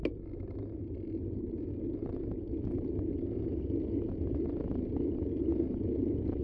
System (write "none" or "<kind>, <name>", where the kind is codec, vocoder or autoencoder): none